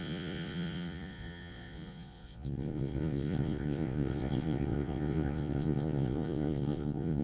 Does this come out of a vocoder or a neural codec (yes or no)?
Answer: yes